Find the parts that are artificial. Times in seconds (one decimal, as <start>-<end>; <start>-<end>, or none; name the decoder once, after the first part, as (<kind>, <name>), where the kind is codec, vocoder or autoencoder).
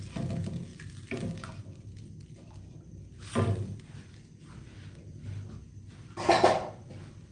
none